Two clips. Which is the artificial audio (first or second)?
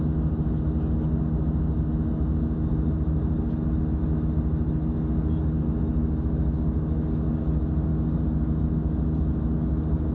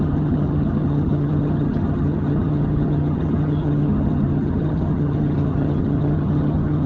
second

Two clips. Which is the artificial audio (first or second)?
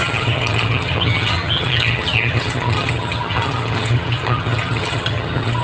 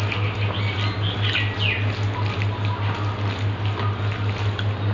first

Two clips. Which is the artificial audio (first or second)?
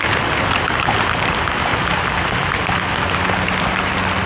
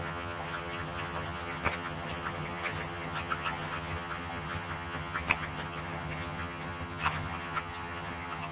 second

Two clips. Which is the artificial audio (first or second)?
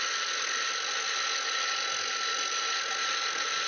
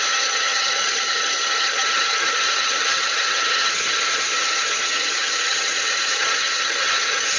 second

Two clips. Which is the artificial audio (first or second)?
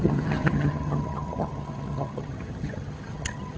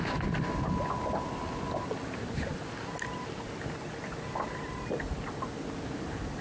first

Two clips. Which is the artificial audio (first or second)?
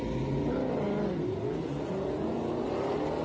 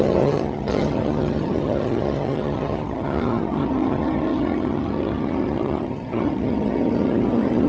second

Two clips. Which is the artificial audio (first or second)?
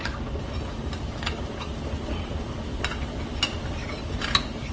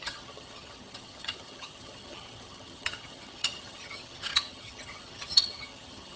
second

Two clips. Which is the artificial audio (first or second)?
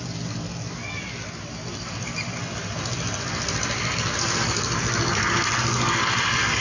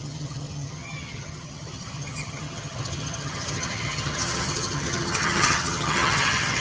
second